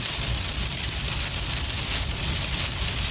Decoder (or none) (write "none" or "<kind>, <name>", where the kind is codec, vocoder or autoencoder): vocoder, BigVGAN v2